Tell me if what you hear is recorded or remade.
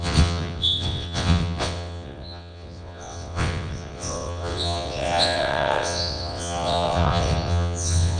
remade